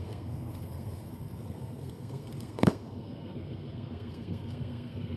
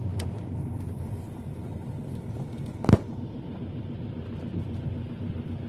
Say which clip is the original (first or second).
second